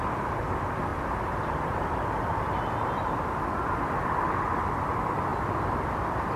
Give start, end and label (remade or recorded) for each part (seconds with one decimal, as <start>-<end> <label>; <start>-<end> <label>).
0.0-6.4 recorded